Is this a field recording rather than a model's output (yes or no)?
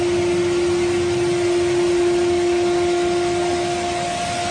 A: yes